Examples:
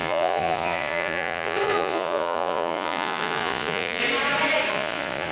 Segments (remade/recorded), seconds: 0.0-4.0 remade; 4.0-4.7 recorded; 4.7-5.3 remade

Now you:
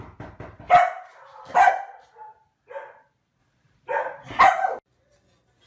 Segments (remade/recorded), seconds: 0.0-5.7 recorded

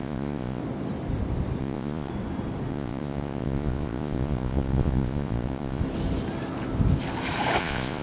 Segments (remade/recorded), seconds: 0.0-0.6 remade; 0.6-1.6 recorded; 1.6-2.1 remade; 2.1-2.7 recorded; 2.7-5.8 remade; 5.8-7.6 recorded; 7.6-8.0 remade